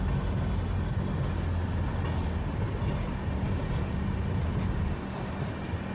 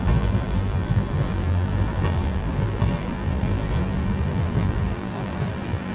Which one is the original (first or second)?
first